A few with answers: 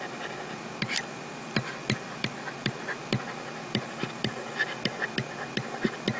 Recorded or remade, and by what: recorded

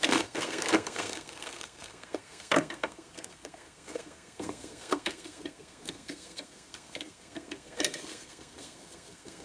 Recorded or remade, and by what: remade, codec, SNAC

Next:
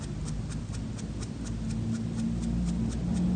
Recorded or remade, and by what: recorded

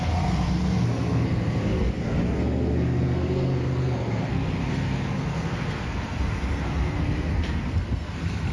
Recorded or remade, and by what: remade, codec, SNAC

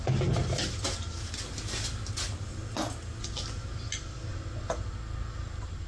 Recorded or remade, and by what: recorded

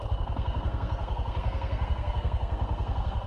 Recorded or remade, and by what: remade, codec, SNAC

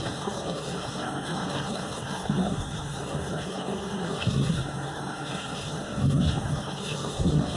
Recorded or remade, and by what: remade, codec, SNAC